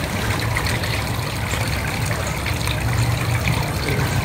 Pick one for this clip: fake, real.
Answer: real